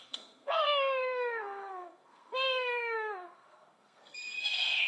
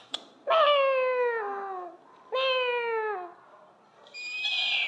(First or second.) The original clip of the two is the second